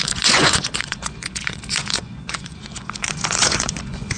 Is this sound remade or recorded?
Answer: remade